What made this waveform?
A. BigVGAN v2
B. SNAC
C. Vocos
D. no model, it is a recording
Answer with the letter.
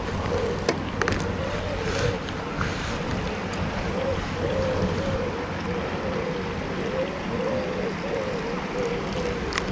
D